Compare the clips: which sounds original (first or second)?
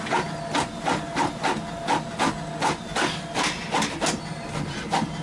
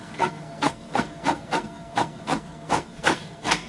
first